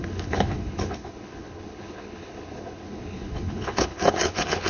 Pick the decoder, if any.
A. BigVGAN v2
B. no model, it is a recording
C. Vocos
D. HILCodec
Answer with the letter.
D